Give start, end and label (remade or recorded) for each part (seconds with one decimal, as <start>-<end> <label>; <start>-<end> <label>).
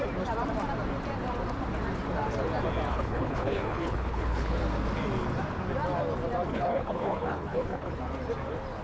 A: 0.0-2.9 recorded; 2.9-4.6 remade; 4.6-6.5 recorded; 6.5-8.0 remade; 8.0-8.8 recorded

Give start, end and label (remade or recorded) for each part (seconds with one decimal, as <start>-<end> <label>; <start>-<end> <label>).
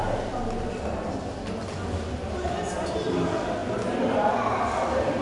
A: 0.0-5.2 recorded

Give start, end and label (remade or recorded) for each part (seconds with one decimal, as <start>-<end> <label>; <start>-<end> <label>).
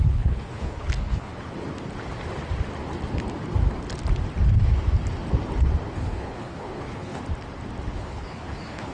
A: 0.0-1.3 remade; 1.3-5.9 recorded; 5.9-7.2 remade; 7.2-7.9 recorded; 7.9-8.9 remade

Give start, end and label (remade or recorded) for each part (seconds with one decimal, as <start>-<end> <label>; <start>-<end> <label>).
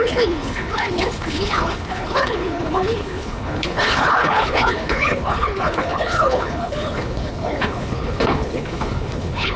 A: 0.0-9.6 remade